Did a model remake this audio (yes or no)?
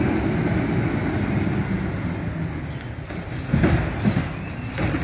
no